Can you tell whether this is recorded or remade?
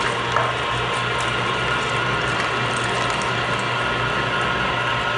recorded